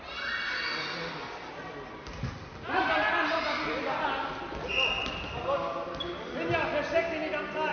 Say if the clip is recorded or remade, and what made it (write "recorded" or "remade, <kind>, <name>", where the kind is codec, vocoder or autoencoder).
recorded